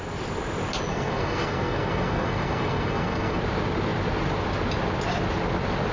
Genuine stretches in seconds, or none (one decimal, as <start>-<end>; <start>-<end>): 0.0-0.9; 3.4-5.9